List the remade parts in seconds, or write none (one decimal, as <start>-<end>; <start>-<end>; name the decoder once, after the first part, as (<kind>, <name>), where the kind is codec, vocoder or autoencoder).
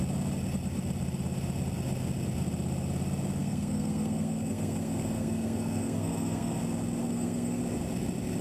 3.4-6.6 (codec, SNAC); 7.0-7.6